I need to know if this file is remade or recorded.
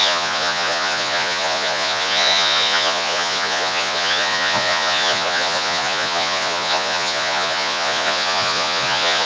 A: remade